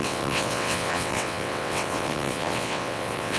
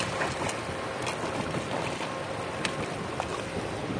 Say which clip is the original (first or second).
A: second